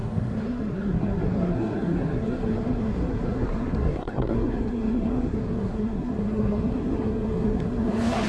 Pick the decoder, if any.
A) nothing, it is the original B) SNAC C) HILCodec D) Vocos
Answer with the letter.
B